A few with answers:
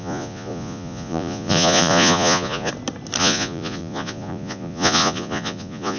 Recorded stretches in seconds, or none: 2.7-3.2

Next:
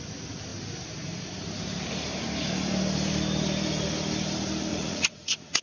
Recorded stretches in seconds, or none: 0.0-4.7

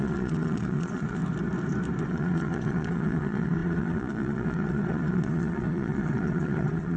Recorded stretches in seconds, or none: 1.2-2.0

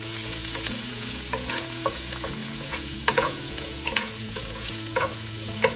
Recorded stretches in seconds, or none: none